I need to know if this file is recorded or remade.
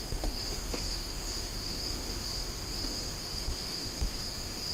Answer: remade